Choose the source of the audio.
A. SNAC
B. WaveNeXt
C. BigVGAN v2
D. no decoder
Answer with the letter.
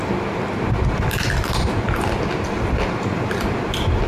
D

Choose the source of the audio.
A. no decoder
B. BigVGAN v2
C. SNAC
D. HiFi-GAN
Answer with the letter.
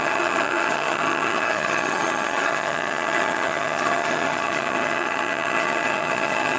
D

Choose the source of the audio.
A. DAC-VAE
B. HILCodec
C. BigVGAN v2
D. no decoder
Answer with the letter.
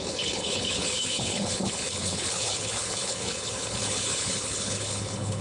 B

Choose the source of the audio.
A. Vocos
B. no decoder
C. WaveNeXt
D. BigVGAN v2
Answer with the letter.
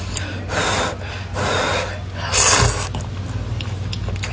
B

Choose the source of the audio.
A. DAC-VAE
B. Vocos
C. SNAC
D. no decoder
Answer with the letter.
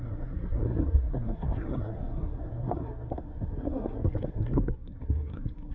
C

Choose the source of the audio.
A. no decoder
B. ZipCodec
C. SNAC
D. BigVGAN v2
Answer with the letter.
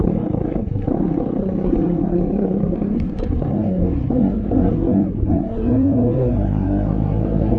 C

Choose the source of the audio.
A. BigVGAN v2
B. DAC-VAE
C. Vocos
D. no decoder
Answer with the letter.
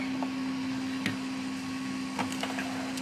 D